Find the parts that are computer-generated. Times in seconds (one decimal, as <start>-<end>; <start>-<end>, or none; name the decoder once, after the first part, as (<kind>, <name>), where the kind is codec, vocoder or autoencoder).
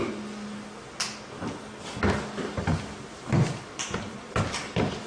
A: 3.1-5.1 (vocoder, BigVGAN v2)